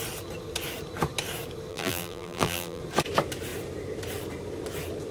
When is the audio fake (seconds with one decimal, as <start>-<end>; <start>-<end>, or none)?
1.7-2.8